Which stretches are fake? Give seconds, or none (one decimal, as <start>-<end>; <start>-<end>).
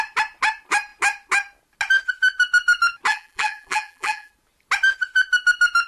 3.1-4.3